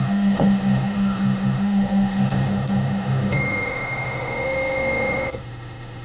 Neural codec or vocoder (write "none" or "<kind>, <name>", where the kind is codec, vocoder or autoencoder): autoencoder, DAC-VAE